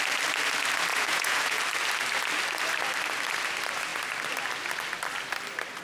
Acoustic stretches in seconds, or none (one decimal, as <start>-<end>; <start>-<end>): 0.0-0.9; 1.6-5.8